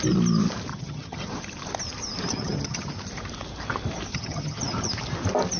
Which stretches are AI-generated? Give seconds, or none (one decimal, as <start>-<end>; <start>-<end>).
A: 0.7-1.3; 2.3-2.9; 4.1-4.9